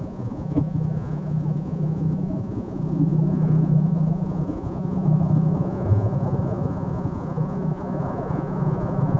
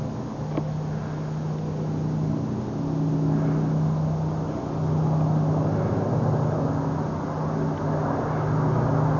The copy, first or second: first